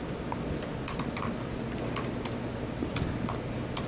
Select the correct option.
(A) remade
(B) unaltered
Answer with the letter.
B